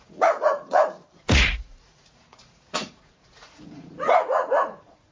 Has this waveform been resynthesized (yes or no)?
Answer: yes